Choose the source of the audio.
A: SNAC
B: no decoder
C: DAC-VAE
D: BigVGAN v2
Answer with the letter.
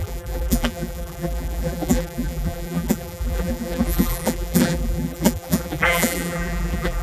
D